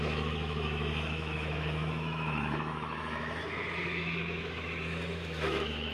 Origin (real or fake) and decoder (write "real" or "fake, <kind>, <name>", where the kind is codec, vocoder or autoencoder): fake, autoencoder, DAC-VAE